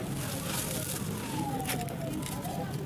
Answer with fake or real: real